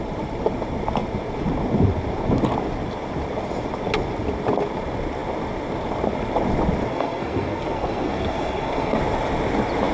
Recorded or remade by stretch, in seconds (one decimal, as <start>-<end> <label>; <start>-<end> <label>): 0.0-6.9 recorded; 6.9-9.0 remade; 9.0-9.9 recorded